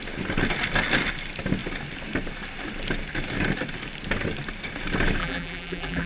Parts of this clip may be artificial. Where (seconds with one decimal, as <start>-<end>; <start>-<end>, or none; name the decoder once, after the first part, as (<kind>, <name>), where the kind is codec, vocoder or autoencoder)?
5.2-6.1 (vocoder, BigVGAN v2)